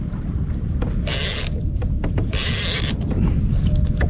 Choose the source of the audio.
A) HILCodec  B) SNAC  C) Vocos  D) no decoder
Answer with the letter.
D